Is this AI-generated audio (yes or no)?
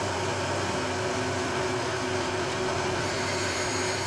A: no